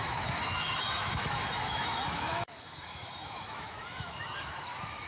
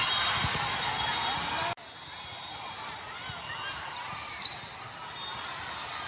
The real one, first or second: second